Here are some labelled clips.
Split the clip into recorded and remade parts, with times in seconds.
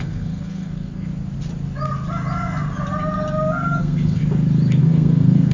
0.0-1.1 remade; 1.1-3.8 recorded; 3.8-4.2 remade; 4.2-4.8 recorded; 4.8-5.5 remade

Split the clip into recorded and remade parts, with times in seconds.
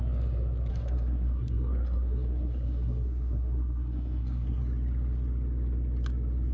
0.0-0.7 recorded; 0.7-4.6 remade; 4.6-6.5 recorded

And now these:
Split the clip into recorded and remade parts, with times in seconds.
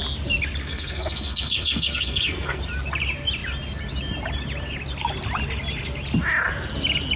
0.0-0.6 recorded; 0.6-2.6 remade; 2.6-7.2 recorded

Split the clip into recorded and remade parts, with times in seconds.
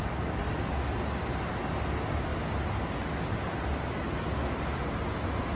0.0-5.6 recorded